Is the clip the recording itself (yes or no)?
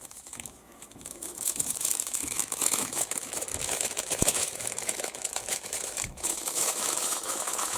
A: no